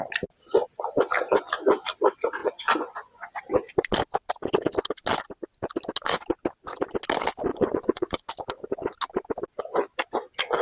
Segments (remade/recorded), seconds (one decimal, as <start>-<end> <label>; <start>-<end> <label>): 0.0-2.4 recorded; 2.4-3.4 remade; 3.4-7.5 recorded; 7.5-8.3 remade; 8.3-10.6 recorded